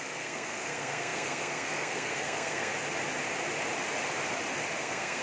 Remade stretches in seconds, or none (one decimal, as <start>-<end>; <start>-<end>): 0.0-2.7; 4.8-5.2